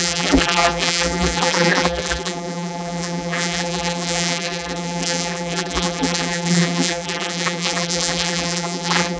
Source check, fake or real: fake